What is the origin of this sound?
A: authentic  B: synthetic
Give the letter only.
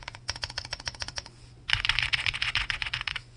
B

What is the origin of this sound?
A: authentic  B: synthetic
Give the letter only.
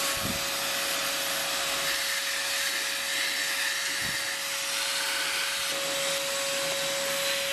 A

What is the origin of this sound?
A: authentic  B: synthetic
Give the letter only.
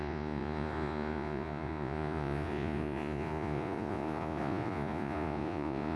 B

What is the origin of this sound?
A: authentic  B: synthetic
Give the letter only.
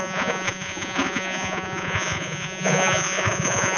B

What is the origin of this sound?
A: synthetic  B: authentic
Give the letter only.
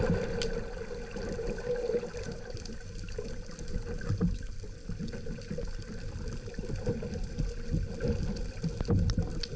B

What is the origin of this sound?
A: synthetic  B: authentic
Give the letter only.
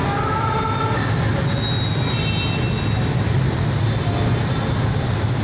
B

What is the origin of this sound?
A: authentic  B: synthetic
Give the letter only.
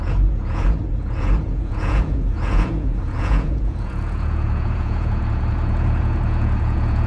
B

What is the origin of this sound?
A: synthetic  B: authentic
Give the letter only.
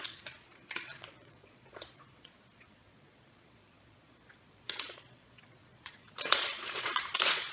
A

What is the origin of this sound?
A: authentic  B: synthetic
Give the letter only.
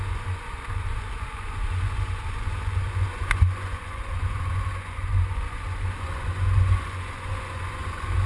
B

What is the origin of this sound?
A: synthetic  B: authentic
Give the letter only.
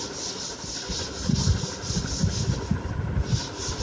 B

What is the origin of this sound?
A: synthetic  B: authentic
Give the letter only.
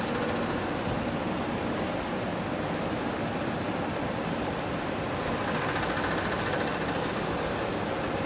B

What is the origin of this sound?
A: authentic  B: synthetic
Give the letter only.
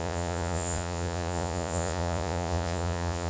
B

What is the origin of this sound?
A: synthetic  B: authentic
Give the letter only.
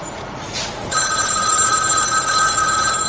A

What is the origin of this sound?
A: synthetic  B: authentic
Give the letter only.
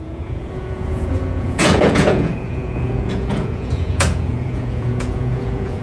A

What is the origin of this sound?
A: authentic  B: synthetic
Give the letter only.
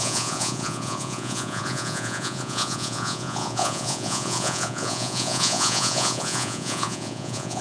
B